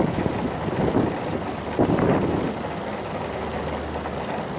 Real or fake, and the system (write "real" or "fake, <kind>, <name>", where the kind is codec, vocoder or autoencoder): real